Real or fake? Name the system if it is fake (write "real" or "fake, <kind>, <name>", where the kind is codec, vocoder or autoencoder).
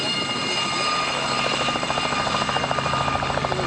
real